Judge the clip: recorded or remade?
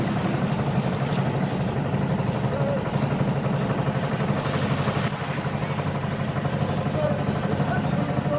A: recorded